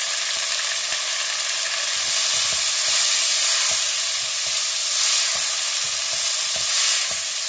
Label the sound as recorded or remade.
recorded